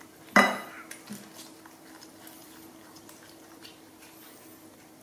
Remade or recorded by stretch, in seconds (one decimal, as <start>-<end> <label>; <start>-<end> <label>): 0.0-2.4 recorded; 2.4-4.2 remade; 4.2-5.0 recorded